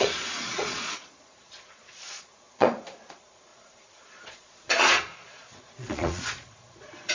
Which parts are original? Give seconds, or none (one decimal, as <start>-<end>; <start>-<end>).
none